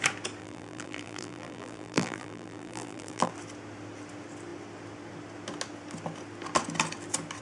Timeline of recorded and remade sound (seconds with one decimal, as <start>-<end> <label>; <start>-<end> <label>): 0.0-0.4 recorded; 0.4-3.3 remade; 3.3-7.4 recorded